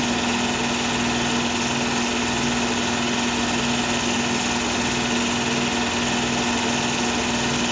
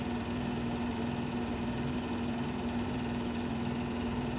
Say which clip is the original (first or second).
first